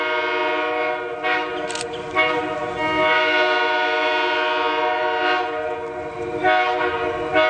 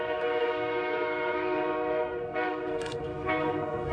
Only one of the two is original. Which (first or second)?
first